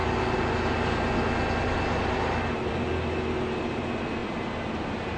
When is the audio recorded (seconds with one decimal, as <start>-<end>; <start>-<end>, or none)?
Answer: 0.0-4.2